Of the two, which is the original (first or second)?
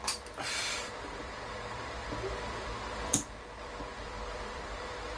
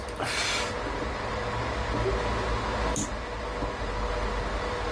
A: second